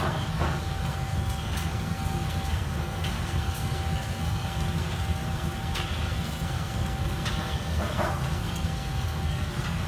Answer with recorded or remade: remade